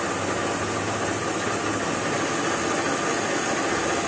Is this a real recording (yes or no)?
yes